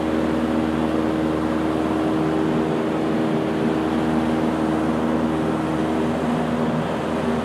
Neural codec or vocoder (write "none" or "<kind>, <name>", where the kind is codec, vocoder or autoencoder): none